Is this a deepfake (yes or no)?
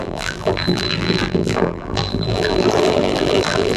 yes